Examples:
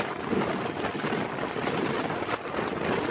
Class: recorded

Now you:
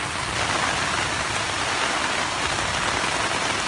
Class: recorded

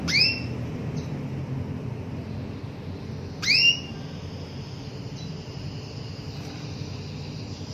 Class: recorded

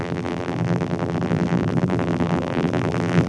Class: remade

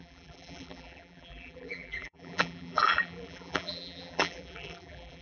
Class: remade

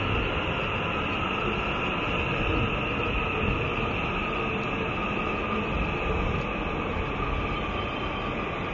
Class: recorded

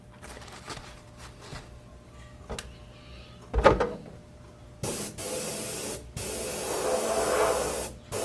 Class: recorded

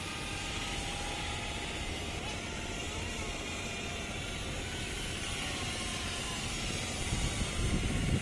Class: remade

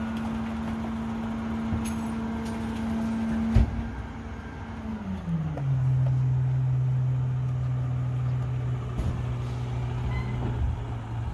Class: recorded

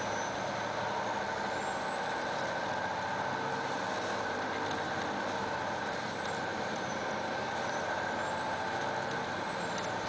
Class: recorded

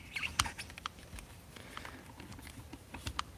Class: recorded